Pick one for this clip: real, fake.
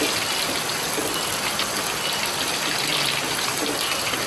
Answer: real